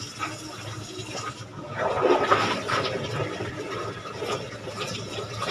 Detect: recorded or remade recorded